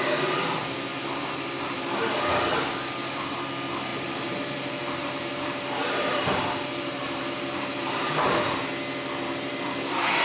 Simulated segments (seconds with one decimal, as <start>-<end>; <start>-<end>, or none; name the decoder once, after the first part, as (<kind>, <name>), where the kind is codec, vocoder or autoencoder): 0.9-1.8 (vocoder, BigVGAN v2); 3.9-8.1